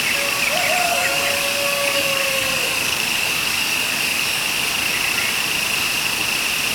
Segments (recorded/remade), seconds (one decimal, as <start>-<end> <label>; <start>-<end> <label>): 0.0-0.9 recorded; 0.9-4.5 remade; 4.5-6.7 recorded

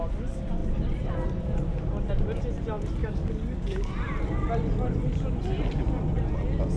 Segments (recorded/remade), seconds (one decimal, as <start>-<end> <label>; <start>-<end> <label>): 0.0-3.0 recorded; 3.0-3.9 remade; 3.9-6.8 recorded

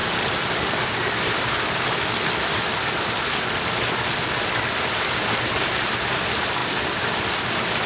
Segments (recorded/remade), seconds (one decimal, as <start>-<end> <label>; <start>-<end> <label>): 0.0-7.9 recorded

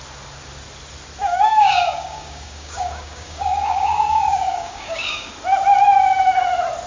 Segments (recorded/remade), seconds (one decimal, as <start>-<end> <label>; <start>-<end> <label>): 0.0-1.2 recorded; 1.2-5.3 remade; 5.3-6.9 recorded

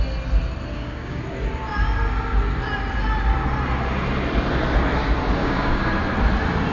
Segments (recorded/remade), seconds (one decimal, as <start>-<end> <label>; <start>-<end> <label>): 0.0-0.7 recorded; 0.7-1.2 remade; 1.2-5.4 recorded; 5.4-5.9 remade; 5.9-6.7 recorded

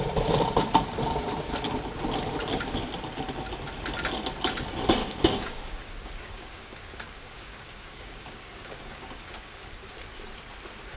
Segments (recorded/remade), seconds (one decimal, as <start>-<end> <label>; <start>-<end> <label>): 0.0-5.0 recorded; 5.0-9.9 remade; 9.9-11.0 recorded

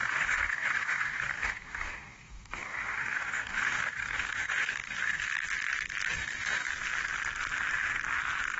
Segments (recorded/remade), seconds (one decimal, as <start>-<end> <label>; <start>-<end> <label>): 0.0-5.2 remade; 5.2-6.1 recorded; 6.1-6.7 remade; 6.7-8.6 recorded